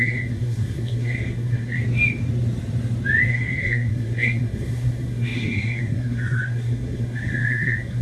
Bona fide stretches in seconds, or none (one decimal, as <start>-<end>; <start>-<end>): 1.8-3.3